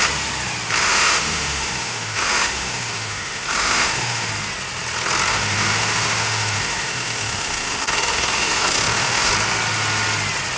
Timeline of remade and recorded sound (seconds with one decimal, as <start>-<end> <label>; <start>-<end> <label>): 0.0-0.8 recorded; 0.8-4.3 remade; 4.3-5.3 recorded; 5.3-9.3 remade; 9.3-10.6 recorded